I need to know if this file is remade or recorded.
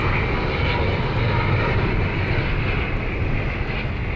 recorded